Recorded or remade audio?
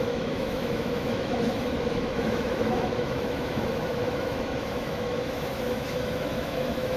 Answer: remade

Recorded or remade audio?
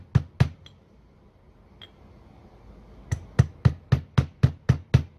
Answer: recorded